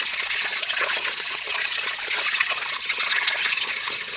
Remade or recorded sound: remade